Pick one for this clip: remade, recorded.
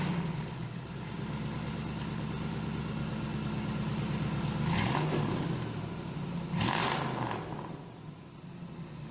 recorded